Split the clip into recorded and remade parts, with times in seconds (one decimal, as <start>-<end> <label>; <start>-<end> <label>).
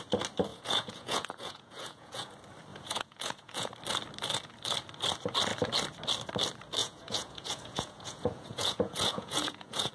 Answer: 0.0-0.5 recorded; 0.5-2.3 remade; 2.3-2.7 recorded; 2.7-3.7 remade; 3.7-6.8 recorded; 6.8-9.9 remade